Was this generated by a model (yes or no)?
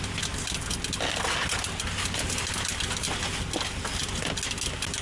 no